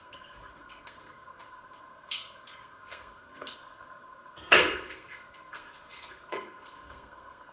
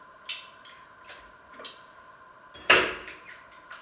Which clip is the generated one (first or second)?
first